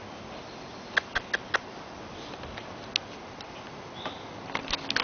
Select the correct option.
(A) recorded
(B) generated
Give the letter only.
A